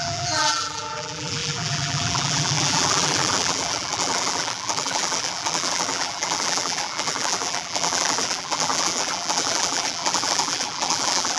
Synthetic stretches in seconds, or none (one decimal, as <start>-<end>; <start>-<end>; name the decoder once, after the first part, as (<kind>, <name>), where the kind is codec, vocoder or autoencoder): 0.0-11.4 (vocoder, BigVGAN v2)